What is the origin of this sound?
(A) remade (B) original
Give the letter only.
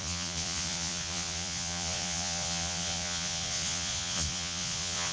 A